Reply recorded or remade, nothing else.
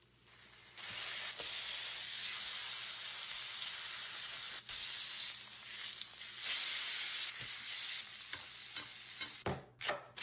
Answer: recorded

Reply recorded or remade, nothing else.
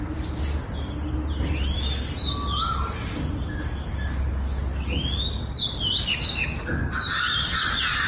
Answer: recorded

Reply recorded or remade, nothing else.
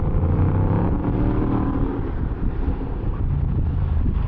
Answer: remade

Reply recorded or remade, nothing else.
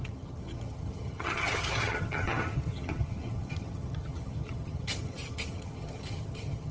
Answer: remade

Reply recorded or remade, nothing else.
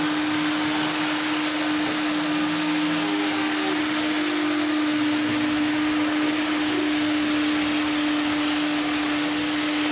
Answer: recorded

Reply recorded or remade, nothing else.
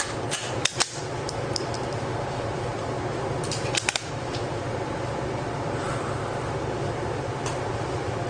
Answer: remade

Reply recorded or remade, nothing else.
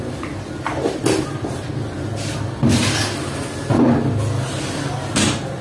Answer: recorded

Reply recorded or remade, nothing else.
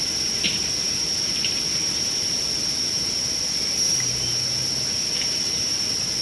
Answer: recorded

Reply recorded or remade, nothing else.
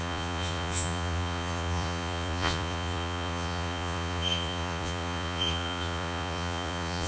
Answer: remade